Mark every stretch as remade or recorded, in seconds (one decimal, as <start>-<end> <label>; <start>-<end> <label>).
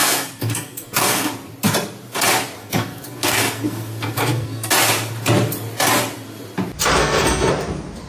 0.0-1.3 remade; 1.3-2.6 recorded; 2.6-4.7 remade; 4.7-7.0 recorded; 7.0-7.5 remade; 7.5-8.1 recorded